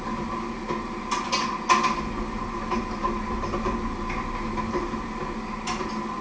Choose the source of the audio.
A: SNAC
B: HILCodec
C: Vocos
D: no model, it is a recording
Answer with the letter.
D